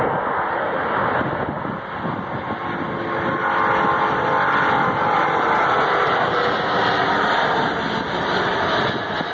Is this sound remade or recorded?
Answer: recorded